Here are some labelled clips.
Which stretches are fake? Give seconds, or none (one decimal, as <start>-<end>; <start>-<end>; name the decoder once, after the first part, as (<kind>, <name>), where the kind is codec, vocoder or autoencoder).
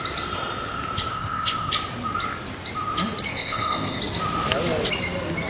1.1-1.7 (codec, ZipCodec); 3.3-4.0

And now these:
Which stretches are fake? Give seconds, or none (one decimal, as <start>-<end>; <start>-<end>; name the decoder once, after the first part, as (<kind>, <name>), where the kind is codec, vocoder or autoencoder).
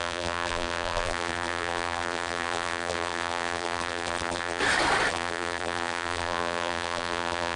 0.0-4.6 (vocoder, BigVGAN v2); 5.1-7.6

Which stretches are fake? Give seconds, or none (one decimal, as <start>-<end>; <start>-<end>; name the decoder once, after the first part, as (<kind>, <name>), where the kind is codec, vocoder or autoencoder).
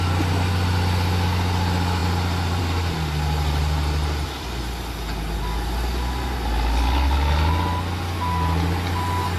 none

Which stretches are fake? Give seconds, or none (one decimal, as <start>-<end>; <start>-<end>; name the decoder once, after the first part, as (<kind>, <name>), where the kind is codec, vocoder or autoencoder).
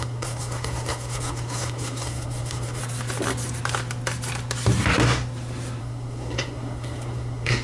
0.0-2.8 (codec, SNAC); 5.8-7.6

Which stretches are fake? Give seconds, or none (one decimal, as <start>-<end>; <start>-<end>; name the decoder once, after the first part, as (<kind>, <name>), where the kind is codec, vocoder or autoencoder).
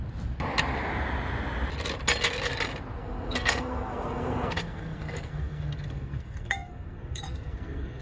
3.0-8.0 (codec, SNAC)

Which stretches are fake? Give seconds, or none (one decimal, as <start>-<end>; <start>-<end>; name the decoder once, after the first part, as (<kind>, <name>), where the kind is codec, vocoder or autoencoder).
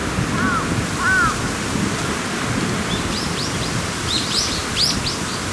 3.1-4.6 (vocoder, BigVGAN v2)